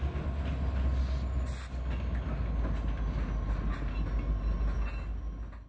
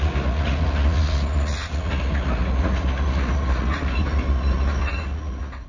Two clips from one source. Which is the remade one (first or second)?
second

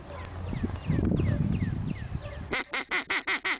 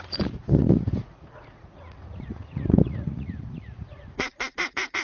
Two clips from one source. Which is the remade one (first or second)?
second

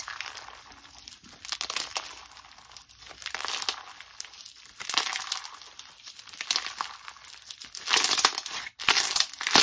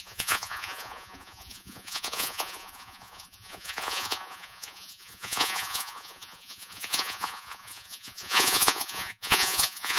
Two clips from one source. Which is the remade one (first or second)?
second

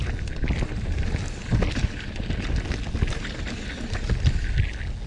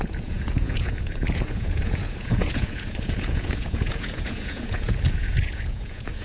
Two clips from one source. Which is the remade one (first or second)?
second